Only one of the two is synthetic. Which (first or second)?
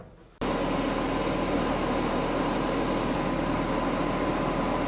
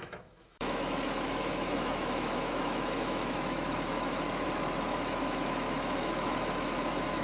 second